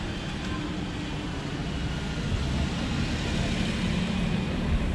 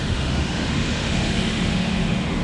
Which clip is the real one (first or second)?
first